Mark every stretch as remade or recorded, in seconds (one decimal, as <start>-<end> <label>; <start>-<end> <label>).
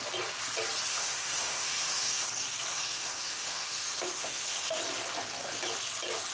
0.0-0.9 recorded; 0.9-2.2 remade; 2.2-2.7 recorded; 2.7-4.8 remade; 4.8-6.3 recorded